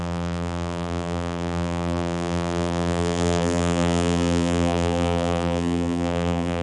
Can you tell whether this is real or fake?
fake